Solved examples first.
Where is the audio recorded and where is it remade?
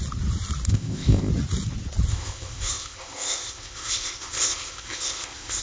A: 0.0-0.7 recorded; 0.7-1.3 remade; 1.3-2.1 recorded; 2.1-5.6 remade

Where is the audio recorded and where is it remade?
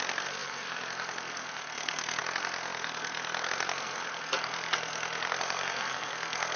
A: 0.0-6.6 remade